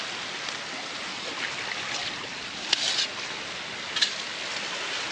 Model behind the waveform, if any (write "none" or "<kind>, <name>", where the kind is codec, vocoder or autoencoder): none